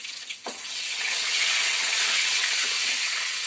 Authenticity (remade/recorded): remade